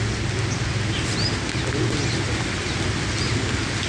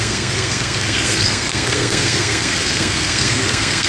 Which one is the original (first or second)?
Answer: first